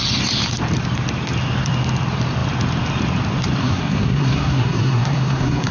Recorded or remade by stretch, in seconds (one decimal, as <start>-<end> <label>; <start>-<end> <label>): 0.0-3.6 recorded; 3.6-5.7 remade